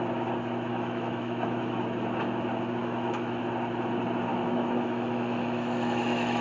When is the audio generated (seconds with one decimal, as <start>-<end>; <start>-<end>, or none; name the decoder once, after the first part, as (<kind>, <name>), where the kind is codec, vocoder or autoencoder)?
0.7-1.8 (autoencoder, DAC-VAE); 2.8-3.4; 4.3-6.4